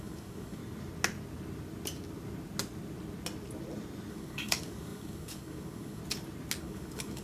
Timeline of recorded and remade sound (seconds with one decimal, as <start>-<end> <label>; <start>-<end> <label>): 0.0-0.6 remade; 0.6-4.1 recorded; 4.1-6.0 remade; 6.0-6.6 recorded; 6.6-7.2 remade

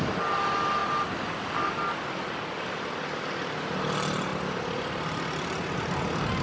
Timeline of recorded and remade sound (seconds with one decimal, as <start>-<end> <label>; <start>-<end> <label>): 0.0-6.4 recorded